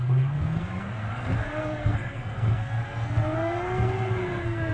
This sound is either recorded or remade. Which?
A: remade